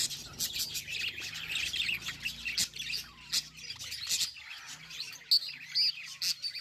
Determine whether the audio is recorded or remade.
recorded